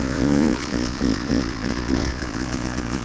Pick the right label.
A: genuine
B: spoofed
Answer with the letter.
B